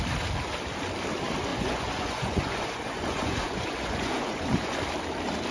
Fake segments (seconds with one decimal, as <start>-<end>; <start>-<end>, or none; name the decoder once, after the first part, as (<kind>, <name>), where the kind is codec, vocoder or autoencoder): 1.5-4.8 (vocoder, Vocos)